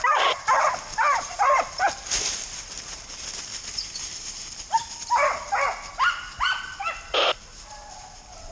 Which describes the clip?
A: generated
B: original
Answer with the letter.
B